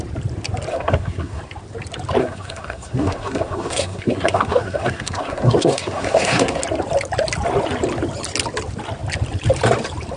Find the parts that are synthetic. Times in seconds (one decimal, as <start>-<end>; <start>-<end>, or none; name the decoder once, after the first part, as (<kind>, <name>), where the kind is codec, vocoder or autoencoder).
0.7-1.4 (codec, SNAC); 2.2-6.6